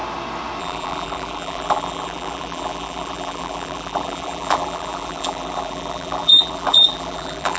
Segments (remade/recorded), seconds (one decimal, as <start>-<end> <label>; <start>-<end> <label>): 0.0-0.6 recorded; 0.6-7.6 remade